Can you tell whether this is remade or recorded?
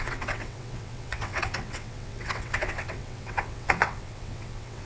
remade